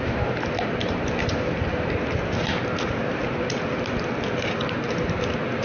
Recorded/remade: recorded